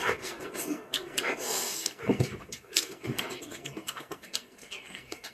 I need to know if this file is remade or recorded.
remade